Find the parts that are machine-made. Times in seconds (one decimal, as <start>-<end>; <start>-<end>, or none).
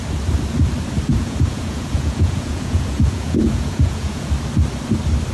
1.1-4.3